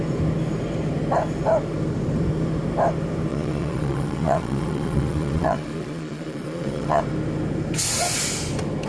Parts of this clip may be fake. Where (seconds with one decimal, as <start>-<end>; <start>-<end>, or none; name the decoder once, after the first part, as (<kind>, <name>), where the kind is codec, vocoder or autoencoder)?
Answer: 3.3-7.0 (vocoder, Vocos)